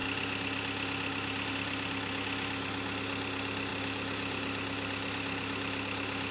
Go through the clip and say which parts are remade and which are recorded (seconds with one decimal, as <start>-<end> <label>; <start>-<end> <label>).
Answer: 0.0-6.3 recorded